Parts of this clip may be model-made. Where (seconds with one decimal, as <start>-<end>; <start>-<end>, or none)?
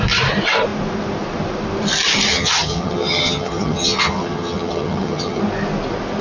2.3-5.4